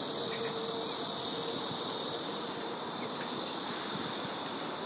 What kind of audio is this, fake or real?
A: real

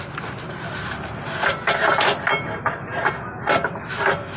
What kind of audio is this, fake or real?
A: real